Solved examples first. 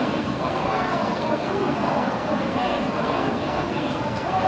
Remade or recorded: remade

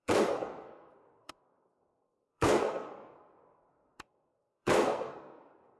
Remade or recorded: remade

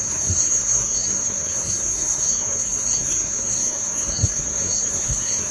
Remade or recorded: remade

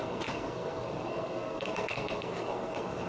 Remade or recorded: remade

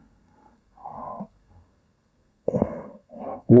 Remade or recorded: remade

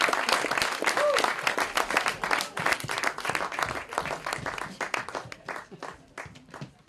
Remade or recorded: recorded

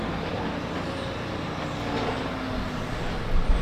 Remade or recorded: recorded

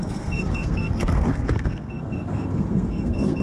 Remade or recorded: remade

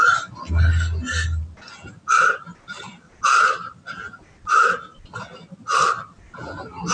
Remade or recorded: recorded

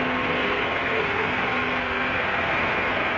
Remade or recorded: remade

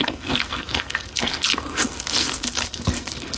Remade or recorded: remade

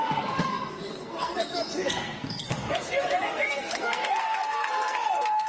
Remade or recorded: remade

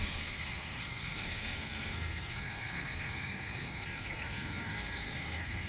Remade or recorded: remade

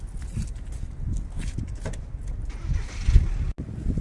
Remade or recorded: recorded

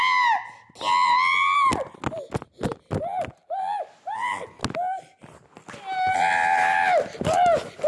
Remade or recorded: recorded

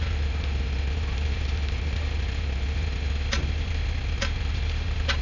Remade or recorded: recorded